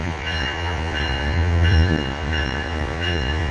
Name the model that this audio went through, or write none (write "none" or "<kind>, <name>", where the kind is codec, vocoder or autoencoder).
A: vocoder, Vocos